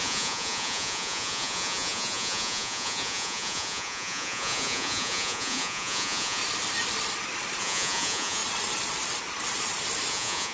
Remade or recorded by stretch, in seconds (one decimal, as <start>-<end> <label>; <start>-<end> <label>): 0.0-6.4 remade; 6.4-7.6 recorded; 7.6-8.4 remade; 8.4-10.1 recorded; 10.1-10.5 remade